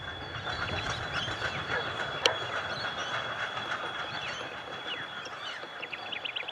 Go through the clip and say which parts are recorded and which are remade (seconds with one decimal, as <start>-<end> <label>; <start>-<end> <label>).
0.0-6.5 recorded